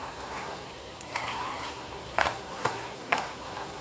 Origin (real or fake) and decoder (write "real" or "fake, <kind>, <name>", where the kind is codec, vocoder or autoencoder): fake, codec, SNAC